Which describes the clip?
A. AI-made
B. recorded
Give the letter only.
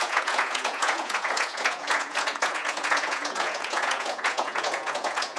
A